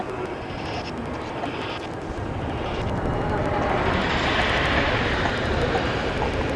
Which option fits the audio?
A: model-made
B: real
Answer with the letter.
A